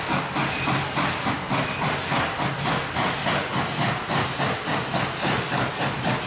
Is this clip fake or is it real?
real